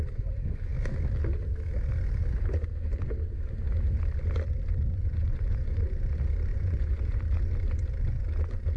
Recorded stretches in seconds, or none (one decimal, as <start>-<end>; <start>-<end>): 0.0-4.9; 5.8-6.5; 7.2-8.8